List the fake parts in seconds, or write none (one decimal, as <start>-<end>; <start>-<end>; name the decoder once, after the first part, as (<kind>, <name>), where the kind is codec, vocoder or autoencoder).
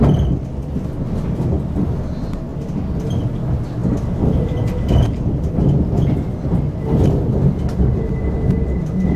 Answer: none